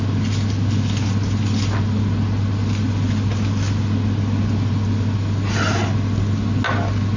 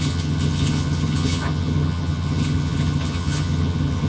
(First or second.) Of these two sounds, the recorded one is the first